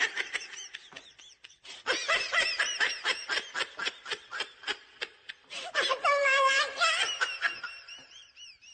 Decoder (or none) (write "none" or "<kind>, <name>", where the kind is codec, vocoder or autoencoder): vocoder, BigVGAN v2